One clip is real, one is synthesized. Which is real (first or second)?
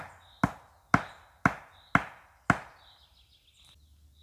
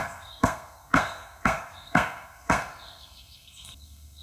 first